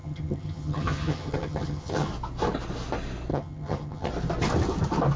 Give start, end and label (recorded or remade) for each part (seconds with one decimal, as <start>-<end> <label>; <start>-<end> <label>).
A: 0.0-2.1 remade; 2.1-3.3 recorded; 3.3-4.1 remade; 4.1-5.2 recorded